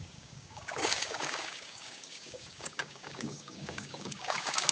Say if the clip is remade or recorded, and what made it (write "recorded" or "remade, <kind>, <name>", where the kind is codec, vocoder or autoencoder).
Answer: remade, codec, DAC